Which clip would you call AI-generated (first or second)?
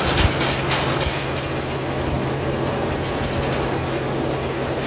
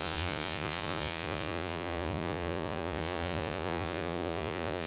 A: second